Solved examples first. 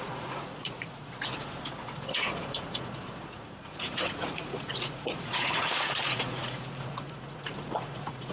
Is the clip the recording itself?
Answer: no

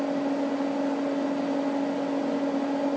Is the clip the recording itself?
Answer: yes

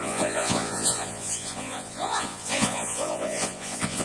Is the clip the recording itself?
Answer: no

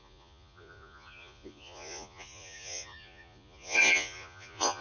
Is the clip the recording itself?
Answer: no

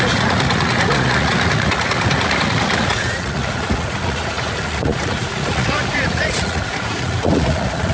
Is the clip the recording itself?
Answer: no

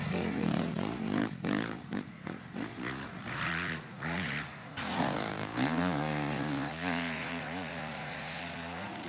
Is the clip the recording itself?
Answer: no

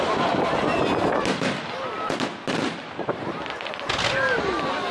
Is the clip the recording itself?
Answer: yes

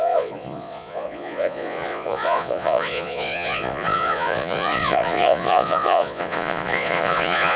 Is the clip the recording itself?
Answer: no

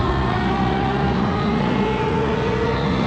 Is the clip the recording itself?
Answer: no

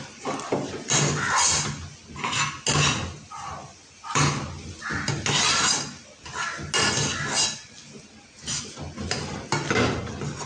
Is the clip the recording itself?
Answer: yes